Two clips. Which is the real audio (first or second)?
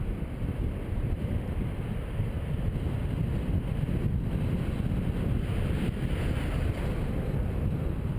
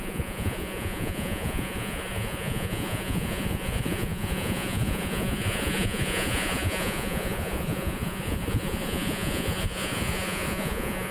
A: first